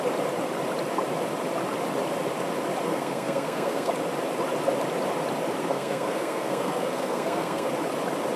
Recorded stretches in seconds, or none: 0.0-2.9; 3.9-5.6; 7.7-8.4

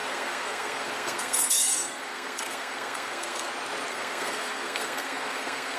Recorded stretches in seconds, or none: 3.5-3.9

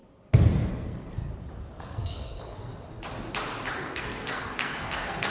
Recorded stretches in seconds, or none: 0.0-0.7; 1.3-1.8; 2.7-3.8

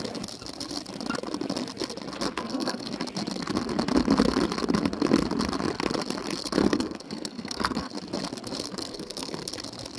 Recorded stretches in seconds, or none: 0.0-2.3; 2.9-6.6; 7.9-8.7; 9.5-10.0